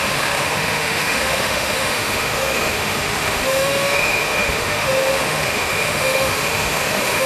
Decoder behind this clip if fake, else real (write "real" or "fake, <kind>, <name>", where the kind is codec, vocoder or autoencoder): fake, autoencoder, DAC-VAE